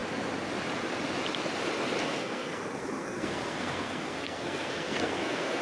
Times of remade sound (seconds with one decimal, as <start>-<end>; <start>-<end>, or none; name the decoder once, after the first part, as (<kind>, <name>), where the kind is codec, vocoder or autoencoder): 2.0-5.6 (codec, SNAC)